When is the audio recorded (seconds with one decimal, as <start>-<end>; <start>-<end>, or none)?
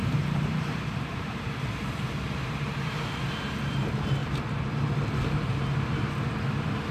2.9-4.2; 4.8-6.9